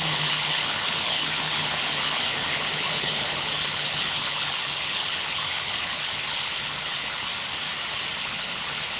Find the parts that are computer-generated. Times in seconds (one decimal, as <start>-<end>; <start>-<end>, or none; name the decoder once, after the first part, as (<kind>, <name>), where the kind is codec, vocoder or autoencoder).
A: 0.0-7.3 (codec, HILCodec); 8.2-9.0